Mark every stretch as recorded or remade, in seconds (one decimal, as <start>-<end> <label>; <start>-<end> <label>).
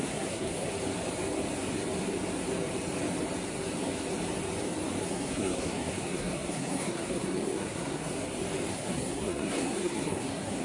0.0-0.7 remade; 0.7-5.0 recorded; 5.0-8.1 remade; 8.1-8.7 recorded; 8.7-10.6 remade